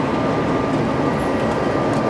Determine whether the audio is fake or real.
real